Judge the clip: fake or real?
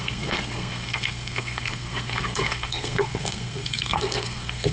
fake